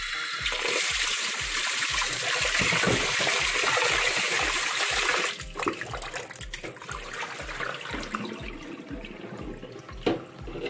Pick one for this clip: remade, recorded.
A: recorded